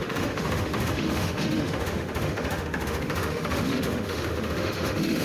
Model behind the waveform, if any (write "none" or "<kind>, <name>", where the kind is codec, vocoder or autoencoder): autoencoder, DAC-VAE